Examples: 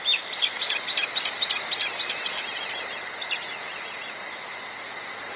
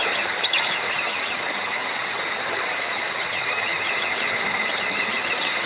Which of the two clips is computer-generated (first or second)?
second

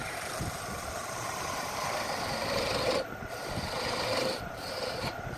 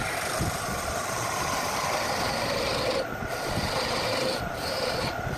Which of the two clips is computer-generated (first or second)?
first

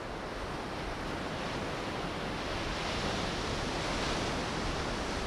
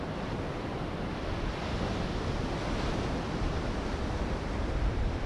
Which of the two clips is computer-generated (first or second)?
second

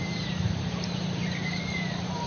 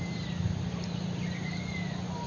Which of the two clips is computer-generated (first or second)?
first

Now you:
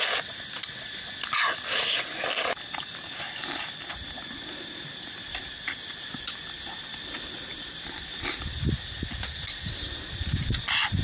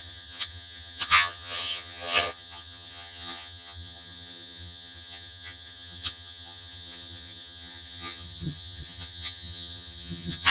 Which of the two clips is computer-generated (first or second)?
second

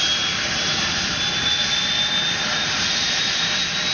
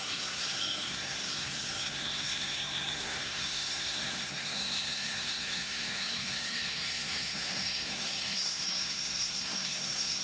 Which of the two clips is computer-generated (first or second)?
second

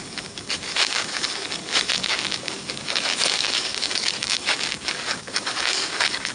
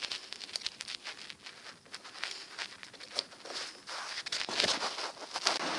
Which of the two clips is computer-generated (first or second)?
first